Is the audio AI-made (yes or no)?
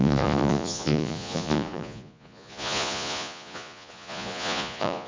yes